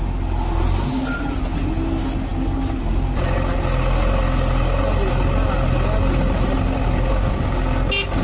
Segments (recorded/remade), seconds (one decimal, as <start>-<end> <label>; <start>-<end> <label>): 0.0-8.2 recorded